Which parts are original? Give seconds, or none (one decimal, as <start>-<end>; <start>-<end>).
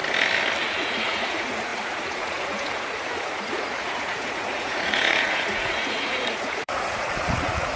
0.0-0.6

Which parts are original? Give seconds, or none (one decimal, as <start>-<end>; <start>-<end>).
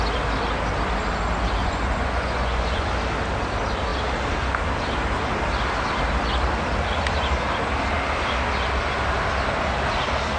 0.0-1.6; 2.9-10.4